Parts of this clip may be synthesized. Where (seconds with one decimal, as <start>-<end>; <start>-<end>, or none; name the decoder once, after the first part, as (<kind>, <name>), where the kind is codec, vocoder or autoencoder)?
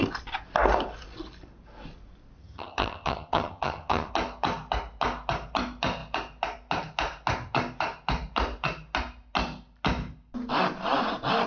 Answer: 2.4-4.1 (vocoder, HiFi-GAN)